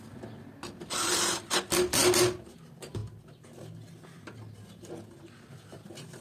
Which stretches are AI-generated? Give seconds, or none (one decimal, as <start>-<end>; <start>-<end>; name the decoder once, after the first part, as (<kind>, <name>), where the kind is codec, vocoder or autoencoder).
none